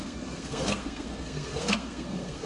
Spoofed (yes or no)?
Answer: yes